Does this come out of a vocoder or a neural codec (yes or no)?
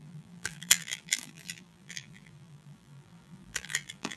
yes